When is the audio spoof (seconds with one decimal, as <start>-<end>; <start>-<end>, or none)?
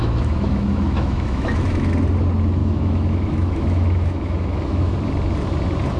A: 0.0-1.9; 2.6-4.9